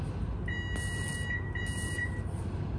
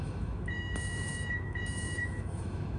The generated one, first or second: second